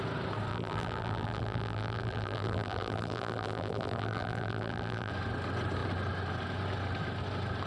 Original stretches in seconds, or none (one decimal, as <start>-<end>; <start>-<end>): 0.0-0.5; 5.1-7.7